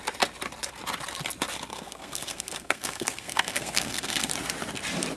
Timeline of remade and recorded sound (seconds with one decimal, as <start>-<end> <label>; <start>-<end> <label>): 0.0-1.7 recorded; 1.7-4.3 remade; 4.3-5.2 recorded